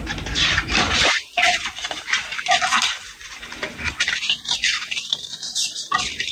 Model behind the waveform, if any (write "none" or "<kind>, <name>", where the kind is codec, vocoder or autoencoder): vocoder, BigVGAN v2